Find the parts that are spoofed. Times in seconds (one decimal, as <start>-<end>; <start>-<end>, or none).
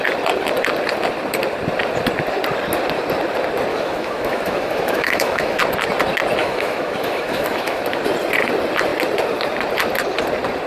3.7-5.6; 6.4-8.0